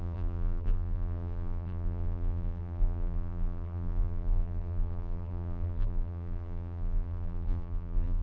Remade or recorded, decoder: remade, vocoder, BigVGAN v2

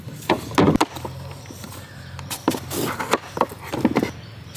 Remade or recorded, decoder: recorded